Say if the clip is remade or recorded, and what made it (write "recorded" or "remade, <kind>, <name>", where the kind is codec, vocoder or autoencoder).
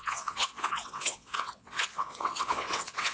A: remade, vocoder, WaveNeXt